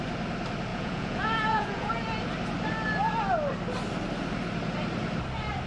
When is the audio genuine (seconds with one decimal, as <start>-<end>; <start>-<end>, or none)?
0.0-0.7; 1.9-5.7